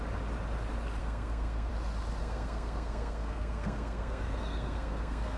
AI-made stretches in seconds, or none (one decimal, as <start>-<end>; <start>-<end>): 1.0-1.7; 2.2-5.4